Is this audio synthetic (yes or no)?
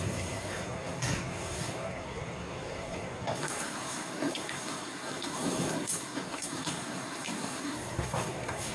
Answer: yes